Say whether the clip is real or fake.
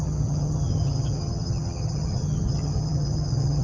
fake